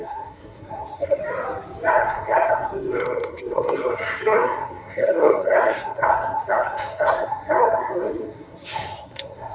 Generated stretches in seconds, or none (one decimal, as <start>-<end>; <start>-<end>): 0.0-1.2; 1.9-9.5